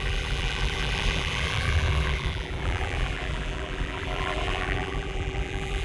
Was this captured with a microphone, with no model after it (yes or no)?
no